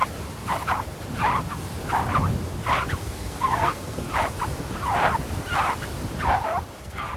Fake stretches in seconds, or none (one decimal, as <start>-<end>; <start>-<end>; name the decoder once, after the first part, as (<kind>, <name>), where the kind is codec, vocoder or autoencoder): 3.0-4.1 (codec, SNAC); 6.8-7.2